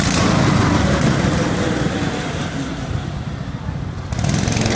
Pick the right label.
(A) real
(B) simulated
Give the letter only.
A